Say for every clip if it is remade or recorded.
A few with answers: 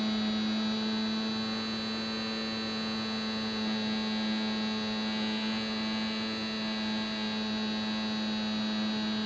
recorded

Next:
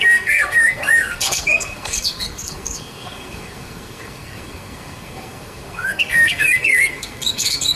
remade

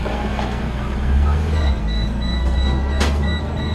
remade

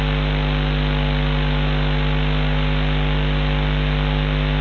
recorded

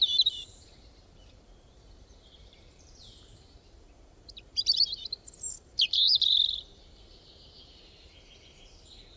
remade